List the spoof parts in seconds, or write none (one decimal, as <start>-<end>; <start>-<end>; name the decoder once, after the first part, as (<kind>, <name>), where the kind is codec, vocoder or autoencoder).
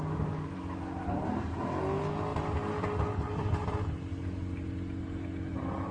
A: none